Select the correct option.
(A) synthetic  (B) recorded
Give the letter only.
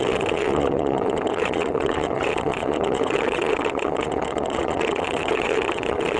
A